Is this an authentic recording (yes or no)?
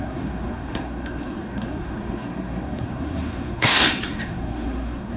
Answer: no